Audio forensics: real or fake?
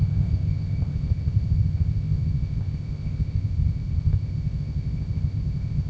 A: fake